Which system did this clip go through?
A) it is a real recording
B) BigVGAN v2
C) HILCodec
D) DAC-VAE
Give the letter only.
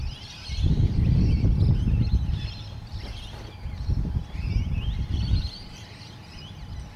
B